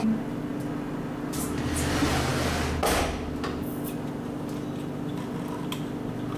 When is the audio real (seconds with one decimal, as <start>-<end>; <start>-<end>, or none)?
0.0-6.4